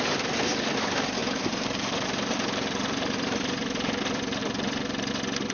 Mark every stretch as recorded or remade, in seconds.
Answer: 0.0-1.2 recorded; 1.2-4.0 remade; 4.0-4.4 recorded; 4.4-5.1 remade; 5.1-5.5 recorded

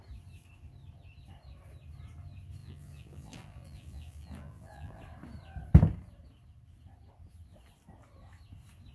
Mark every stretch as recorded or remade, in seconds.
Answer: 0.0-2.6 recorded; 2.6-5.0 remade; 5.0-8.9 recorded

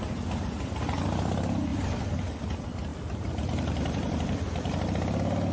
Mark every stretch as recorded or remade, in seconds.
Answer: 0.0-1.7 recorded; 1.7-2.2 remade; 2.2-2.9 recorded; 2.9-4.4 remade; 4.4-5.5 recorded

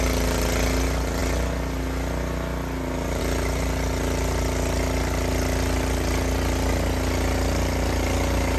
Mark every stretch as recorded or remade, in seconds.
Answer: 0.0-8.6 recorded

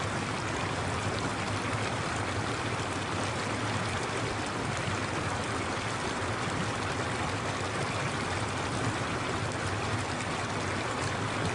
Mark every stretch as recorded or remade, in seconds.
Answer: 0.0-1.3 recorded; 1.3-5.7 remade; 5.7-11.5 recorded

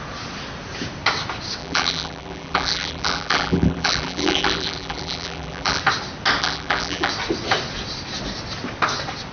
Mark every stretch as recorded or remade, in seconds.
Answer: 0.0-1.6 recorded; 1.6-5.8 remade; 5.8-6.4 recorded; 6.4-7.1 remade; 7.1-9.3 recorded